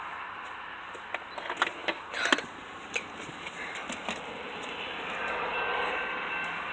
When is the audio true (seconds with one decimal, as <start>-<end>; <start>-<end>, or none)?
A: 0.0-6.7